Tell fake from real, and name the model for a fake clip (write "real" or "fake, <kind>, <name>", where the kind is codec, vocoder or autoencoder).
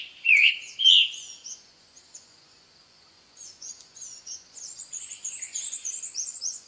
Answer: fake, vocoder, Vocos